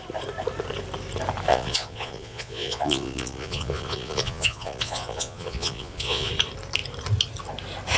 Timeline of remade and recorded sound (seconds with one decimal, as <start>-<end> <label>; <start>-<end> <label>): 0.0-1.5 recorded; 1.5-6.3 remade; 6.3-8.0 recorded